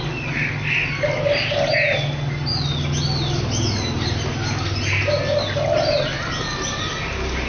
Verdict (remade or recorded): recorded